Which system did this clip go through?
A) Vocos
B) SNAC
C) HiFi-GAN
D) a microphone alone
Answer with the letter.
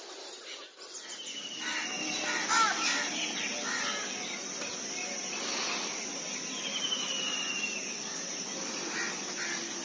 D